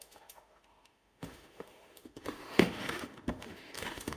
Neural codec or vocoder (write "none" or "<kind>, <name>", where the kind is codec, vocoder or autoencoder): autoencoder, DAC-VAE